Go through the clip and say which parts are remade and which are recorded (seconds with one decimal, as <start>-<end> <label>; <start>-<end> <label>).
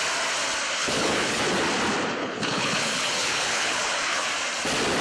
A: 0.0-0.8 recorded; 0.8-1.4 remade; 1.4-2.2 recorded; 2.2-4.3 remade; 4.3-5.0 recorded